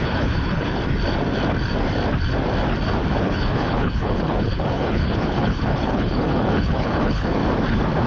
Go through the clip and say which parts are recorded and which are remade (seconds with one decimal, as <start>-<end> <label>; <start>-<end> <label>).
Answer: 0.0-0.8 remade; 0.8-3.2 recorded; 3.2-7.4 remade; 7.4-8.1 recorded